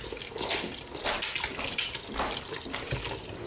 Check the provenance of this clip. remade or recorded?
recorded